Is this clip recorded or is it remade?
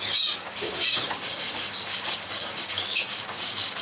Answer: remade